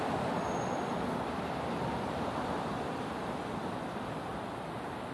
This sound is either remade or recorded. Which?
recorded